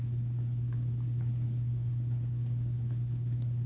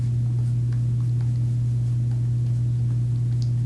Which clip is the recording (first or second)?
second